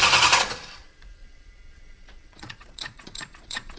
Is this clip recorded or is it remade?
remade